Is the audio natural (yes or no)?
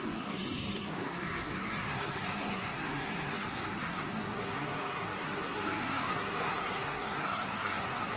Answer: no